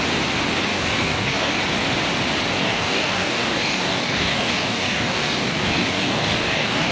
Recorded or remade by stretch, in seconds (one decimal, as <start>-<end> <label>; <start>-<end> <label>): 0.0-0.7 recorded; 0.7-1.6 remade; 1.6-2.6 recorded; 2.6-6.9 remade